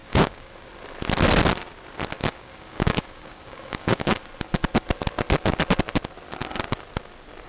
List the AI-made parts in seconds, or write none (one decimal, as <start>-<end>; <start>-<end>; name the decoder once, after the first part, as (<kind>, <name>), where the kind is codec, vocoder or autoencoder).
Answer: 0.0-0.7 (codec, DAC); 2.2-4.2